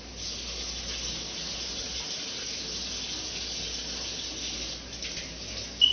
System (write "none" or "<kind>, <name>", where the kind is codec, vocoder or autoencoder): none